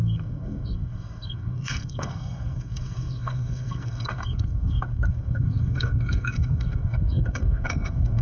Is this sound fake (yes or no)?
yes